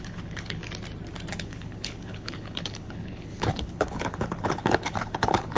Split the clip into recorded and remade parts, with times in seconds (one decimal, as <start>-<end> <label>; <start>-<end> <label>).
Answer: 0.0-0.6 remade; 0.6-1.3 recorded; 1.3-5.6 remade